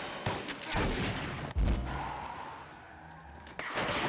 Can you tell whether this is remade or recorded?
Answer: recorded